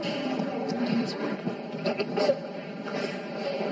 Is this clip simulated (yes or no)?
no